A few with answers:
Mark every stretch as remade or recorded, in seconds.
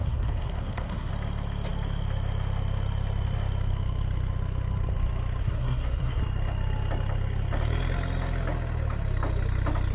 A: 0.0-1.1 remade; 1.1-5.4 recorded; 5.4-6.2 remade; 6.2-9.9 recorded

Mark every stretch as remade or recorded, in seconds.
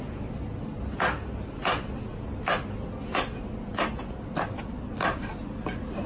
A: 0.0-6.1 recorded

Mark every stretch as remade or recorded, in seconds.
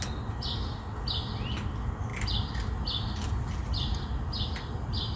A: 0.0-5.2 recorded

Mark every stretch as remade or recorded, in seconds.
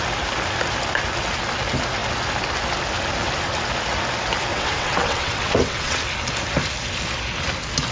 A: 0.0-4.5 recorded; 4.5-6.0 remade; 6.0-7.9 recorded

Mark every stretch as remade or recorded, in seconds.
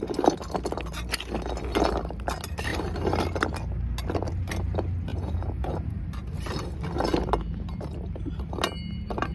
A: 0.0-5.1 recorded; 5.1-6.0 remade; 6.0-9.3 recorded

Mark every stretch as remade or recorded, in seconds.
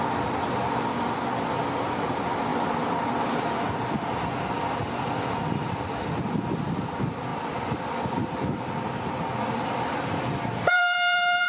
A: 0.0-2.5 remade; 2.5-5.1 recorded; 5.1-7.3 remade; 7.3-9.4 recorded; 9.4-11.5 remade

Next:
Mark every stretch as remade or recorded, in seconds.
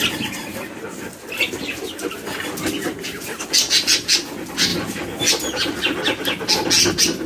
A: 0.0-7.3 recorded